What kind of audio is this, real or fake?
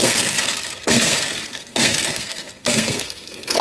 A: fake